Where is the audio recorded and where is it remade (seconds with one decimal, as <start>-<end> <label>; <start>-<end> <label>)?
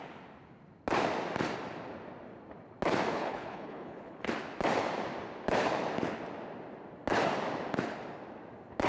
0.0-3.1 recorded; 3.1-4.3 remade; 4.3-8.9 recorded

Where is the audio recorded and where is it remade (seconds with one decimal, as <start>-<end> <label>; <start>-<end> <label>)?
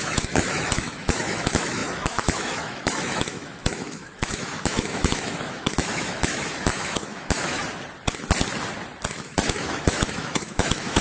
0.0-7.6 remade; 7.6-9.1 recorded; 9.1-11.0 remade